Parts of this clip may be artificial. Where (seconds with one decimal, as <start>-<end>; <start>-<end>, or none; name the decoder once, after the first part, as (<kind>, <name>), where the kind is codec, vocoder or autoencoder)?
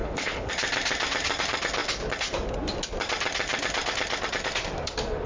0.0-0.5 (codec, HILCodec)